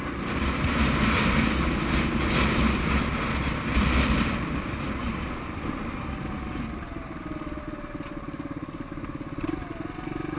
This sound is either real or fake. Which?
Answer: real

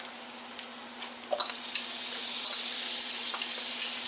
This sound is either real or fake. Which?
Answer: real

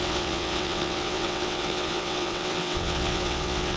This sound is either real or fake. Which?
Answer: fake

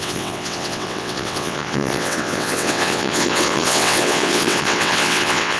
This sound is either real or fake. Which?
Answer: fake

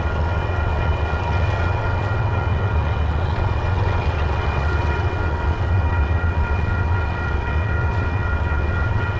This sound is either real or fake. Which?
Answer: fake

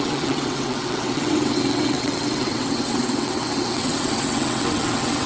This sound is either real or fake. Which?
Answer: fake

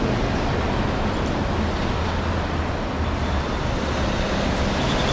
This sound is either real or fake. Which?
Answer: real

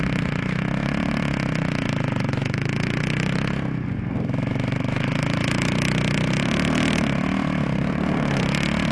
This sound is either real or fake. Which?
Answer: real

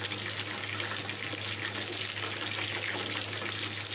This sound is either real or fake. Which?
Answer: real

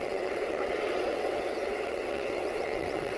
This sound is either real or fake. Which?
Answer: fake